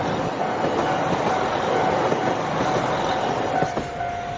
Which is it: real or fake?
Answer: real